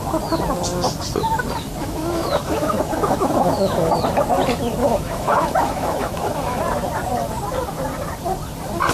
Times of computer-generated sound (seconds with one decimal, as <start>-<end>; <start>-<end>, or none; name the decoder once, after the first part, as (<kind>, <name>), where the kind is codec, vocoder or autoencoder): 1.8-3.9 (autoencoder, DAC-VAE); 4.8-6.6